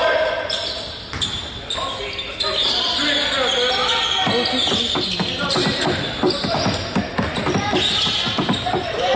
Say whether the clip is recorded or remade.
recorded